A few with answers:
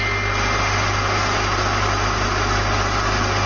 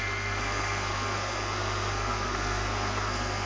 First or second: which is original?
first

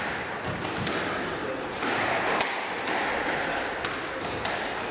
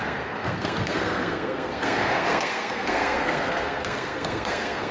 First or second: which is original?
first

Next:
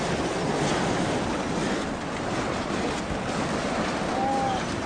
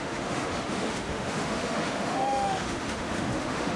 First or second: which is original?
first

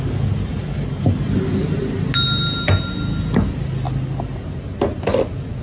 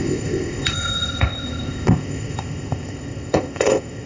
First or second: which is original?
first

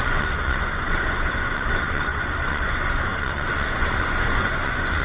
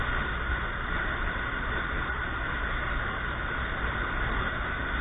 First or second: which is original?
second